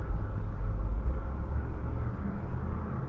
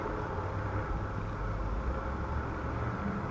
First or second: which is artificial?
first